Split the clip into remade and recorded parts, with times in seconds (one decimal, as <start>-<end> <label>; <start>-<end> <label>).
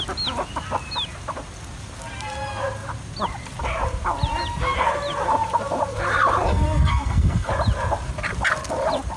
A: 0.0-6.5 recorded; 6.5-7.5 remade; 7.5-9.2 recorded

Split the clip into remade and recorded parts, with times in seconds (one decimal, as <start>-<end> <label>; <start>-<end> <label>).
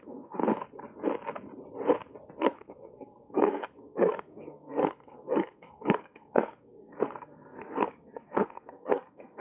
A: 0.0-0.4 remade; 0.4-2.4 recorded; 2.4-9.4 remade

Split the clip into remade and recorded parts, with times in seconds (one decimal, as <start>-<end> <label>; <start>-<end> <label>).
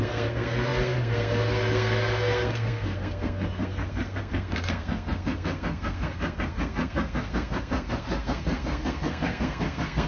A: 0.0-10.1 remade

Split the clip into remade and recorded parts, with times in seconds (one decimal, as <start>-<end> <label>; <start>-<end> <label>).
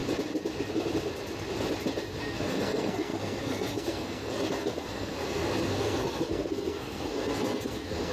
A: 0.0-2.2 recorded; 2.2-8.1 remade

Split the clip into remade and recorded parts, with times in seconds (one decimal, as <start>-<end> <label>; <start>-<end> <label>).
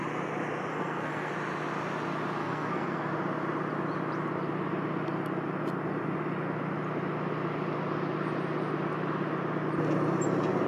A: 0.0-0.7 recorded; 0.7-1.3 remade; 1.3-2.4 recorded; 2.4-3.1 remade; 3.1-10.7 recorded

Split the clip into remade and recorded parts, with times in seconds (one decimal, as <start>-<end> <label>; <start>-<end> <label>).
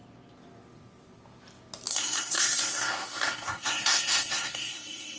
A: 0.0-1.9 recorded; 1.9-5.2 remade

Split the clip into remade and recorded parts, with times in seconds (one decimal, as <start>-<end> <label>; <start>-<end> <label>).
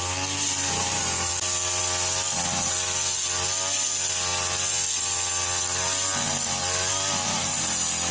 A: 0.0-8.1 recorded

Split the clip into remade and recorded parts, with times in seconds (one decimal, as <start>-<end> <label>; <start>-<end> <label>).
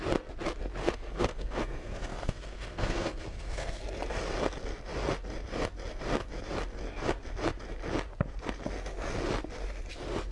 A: 0.0-0.8 recorded; 0.8-3.8 remade; 3.8-10.3 recorded